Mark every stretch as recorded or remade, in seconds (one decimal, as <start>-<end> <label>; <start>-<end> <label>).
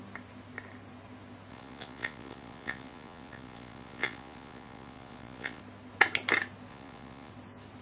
0.0-1.5 recorded; 1.5-5.6 remade; 5.6-6.7 recorded; 6.7-7.3 remade; 7.3-7.8 recorded